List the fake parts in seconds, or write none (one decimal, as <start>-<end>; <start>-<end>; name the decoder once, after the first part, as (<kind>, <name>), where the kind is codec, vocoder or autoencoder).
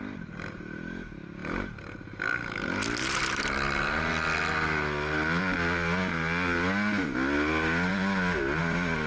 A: none